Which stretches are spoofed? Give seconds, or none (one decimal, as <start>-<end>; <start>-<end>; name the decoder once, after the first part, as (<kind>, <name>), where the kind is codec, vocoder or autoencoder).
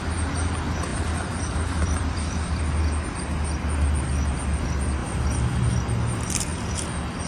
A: 0.9-2.8 (vocoder, BigVGAN v2); 5.0-5.7